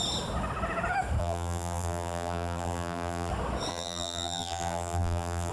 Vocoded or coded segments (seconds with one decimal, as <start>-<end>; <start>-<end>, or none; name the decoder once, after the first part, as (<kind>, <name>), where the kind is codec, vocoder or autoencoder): 1.2-3.3 (vocoder, BigVGAN v2); 3.7-5.5